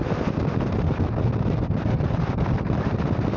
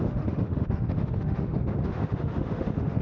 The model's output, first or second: second